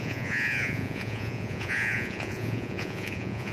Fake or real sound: fake